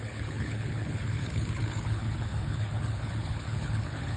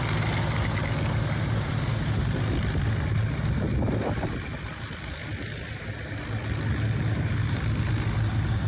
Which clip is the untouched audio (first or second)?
second